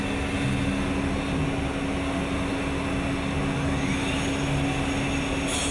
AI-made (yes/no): no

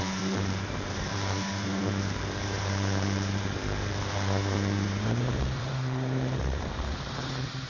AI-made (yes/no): yes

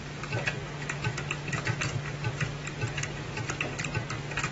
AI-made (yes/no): no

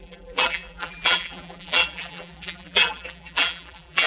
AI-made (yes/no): yes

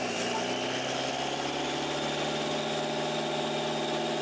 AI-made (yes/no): no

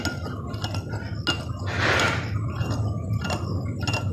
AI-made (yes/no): no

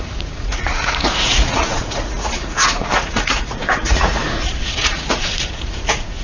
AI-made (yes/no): yes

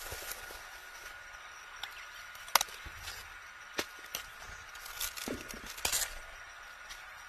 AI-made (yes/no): no